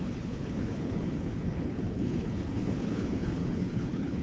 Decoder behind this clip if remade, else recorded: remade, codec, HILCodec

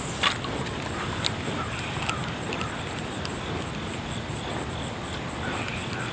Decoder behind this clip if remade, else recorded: recorded